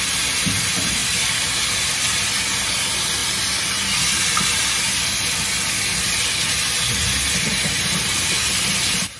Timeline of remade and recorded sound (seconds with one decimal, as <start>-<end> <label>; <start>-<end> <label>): 0.0-9.2 recorded